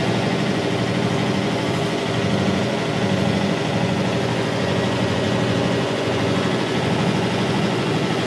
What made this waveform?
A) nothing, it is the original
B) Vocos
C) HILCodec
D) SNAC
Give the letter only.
B